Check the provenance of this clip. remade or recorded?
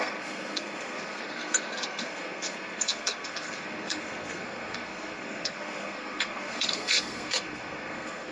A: remade